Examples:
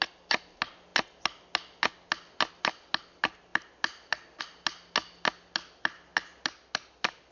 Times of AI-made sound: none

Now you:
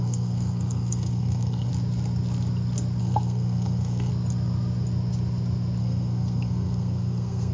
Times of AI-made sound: 0.0-1.7 (codec, SNAC); 3.0-4.1; 5.8-7.5

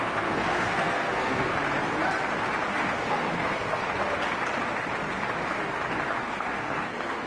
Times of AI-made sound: 0.0-1.5 (codec, SNAC); 2.7-3.8; 6.2-7.3